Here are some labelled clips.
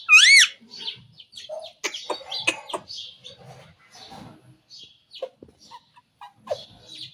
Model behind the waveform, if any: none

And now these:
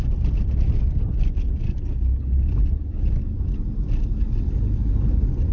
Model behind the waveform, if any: none